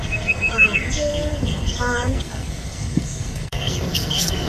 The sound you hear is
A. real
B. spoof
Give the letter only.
B